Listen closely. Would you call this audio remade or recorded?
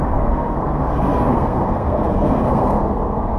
remade